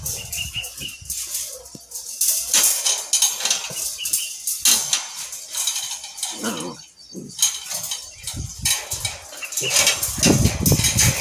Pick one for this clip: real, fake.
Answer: real